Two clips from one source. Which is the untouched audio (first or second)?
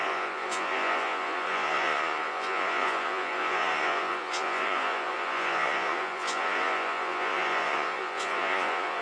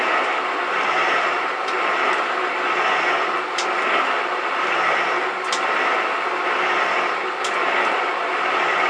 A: second